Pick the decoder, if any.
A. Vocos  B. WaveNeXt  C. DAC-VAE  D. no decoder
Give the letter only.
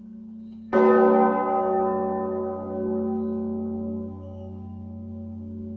C